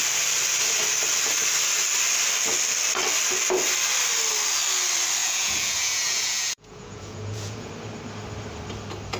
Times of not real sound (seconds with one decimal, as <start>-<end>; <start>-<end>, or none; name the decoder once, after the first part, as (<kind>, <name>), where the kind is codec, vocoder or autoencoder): 5.2-7.7 (vocoder, Vocos)